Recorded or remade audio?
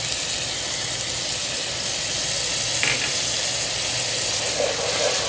recorded